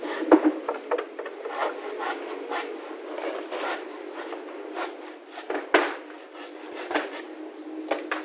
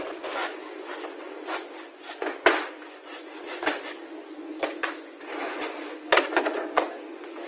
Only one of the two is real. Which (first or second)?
first